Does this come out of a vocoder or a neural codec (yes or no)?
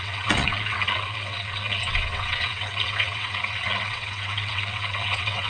yes